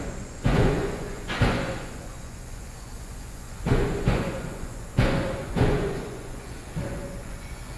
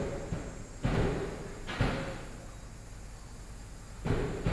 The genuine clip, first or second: second